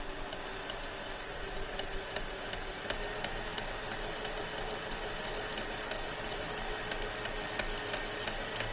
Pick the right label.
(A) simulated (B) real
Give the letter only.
B